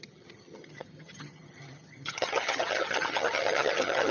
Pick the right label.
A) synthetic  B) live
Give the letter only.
A